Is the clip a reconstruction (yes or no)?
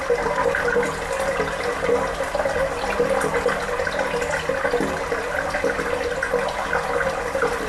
no